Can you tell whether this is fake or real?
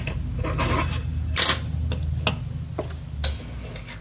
real